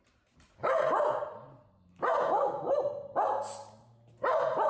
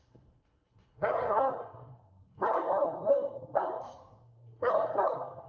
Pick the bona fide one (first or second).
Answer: first